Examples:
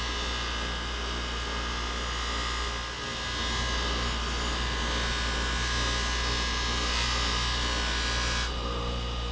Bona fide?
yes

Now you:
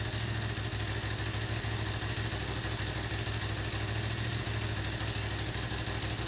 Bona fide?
yes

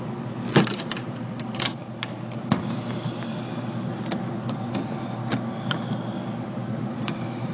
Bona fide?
yes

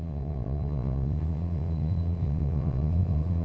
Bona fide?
no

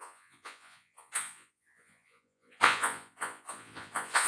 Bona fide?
no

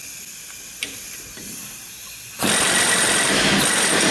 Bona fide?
yes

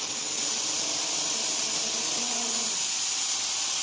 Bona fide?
yes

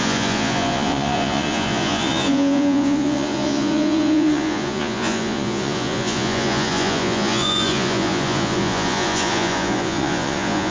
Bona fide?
no